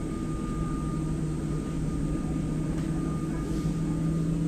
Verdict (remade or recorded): recorded